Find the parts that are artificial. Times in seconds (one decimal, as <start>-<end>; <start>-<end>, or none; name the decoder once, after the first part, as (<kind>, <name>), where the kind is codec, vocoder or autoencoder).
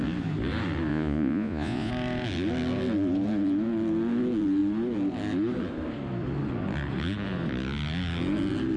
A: 0.9-1.9 (vocoder, Vocos)